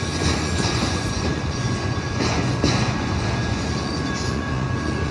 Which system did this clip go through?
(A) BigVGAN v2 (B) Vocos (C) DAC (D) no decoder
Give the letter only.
B